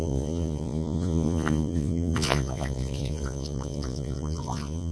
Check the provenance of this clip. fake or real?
fake